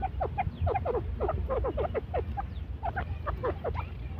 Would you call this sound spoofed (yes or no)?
yes